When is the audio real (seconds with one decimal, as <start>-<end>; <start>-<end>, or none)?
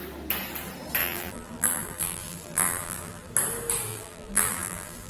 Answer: 0.0-1.0; 3.3-3.9